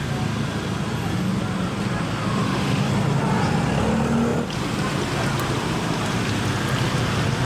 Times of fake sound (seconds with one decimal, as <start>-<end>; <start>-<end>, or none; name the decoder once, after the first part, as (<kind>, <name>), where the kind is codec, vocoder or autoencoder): 2.4-2.9 (autoencoder, DAC-VAE)